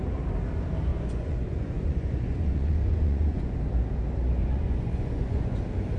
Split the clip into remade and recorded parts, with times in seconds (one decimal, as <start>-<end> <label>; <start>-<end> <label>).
0.0-0.9 recorded; 0.9-3.6 remade; 3.6-4.4 recorded; 4.4-5.6 remade; 5.6-6.0 recorded